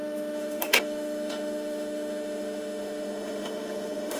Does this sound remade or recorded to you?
remade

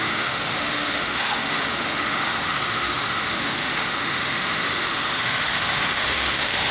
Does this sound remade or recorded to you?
remade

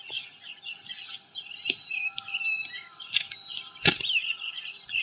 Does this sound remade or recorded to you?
recorded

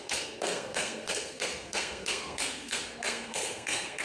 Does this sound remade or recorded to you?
remade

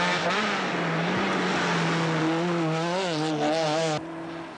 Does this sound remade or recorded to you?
recorded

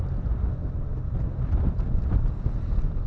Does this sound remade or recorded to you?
recorded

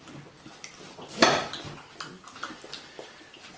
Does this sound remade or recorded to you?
recorded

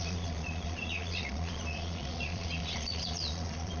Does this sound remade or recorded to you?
remade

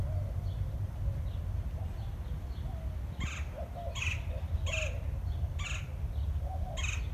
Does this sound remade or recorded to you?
recorded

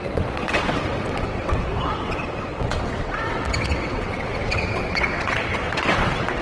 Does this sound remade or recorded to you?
remade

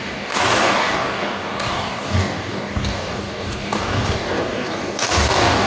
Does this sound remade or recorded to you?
remade